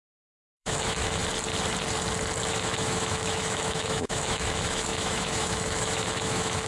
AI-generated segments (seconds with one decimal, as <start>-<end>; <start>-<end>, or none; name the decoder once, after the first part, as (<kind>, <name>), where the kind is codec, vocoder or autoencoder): 0.0-1.2 (autoencoder, DAC-VAE); 2.5-6.7